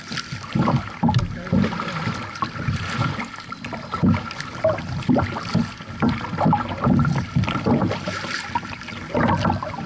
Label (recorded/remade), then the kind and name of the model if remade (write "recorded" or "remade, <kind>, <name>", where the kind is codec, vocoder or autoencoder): recorded